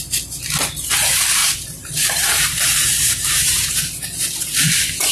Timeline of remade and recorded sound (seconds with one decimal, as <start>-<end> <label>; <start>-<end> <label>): 0.0-1.4 recorded; 1.4-3.7 remade; 3.7-5.1 recorded